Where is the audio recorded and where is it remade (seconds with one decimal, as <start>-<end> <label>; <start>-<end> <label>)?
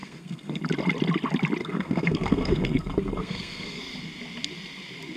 0.0-0.6 remade; 0.6-1.6 recorded; 1.6-3.8 remade; 3.8-5.2 recorded